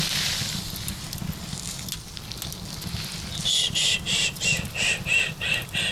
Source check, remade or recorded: recorded